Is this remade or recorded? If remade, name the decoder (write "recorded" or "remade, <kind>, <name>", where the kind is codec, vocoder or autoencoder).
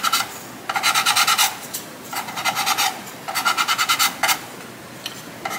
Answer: recorded